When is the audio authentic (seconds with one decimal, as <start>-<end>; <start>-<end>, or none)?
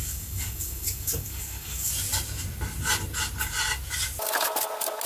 1.9-5.1